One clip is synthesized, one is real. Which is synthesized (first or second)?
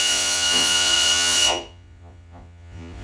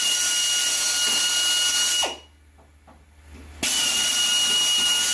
first